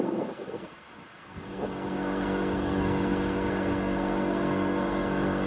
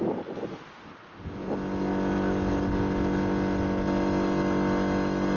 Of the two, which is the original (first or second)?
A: second